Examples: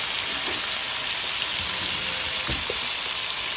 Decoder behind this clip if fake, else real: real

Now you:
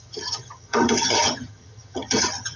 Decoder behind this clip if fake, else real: fake, vocoder, HiFi-GAN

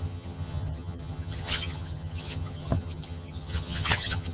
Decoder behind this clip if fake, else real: fake, vocoder, HiFi-GAN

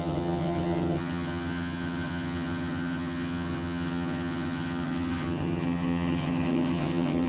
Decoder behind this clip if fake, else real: fake, vocoder, HiFi-GAN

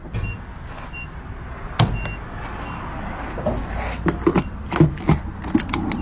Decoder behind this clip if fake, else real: real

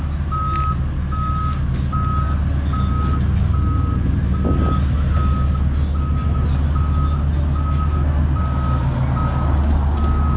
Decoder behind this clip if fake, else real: real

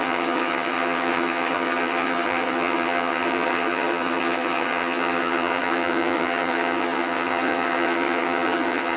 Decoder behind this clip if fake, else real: fake, vocoder, HiFi-GAN